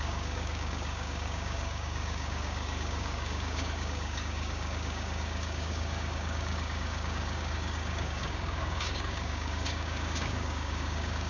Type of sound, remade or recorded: remade